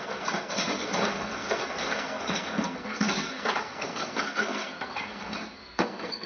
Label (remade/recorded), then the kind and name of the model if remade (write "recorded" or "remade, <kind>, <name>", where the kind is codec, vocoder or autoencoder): remade, codec, SNAC